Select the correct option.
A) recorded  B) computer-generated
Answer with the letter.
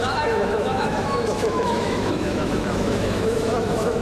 B